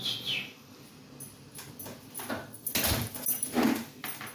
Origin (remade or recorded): recorded